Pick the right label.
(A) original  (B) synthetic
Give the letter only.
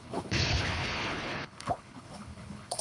B